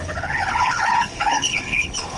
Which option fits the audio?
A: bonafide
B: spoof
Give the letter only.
B